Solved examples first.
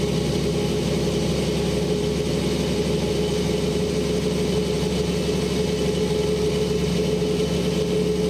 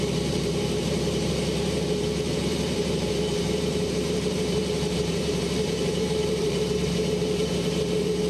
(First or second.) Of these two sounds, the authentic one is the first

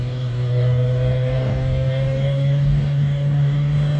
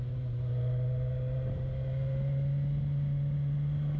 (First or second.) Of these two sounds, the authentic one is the second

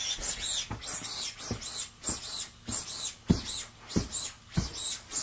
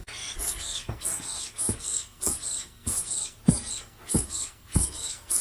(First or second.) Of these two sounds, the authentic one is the first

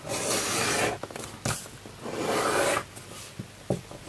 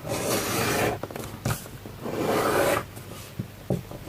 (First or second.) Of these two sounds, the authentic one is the first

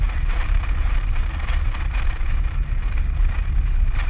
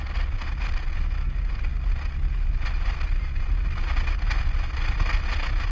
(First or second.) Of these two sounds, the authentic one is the second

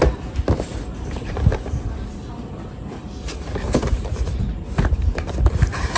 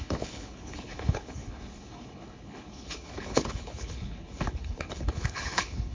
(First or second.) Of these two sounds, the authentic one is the first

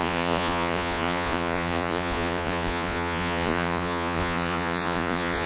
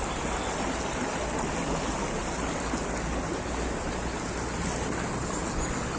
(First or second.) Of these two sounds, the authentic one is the second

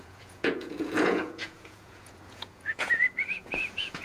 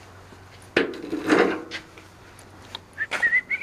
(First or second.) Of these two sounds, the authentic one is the second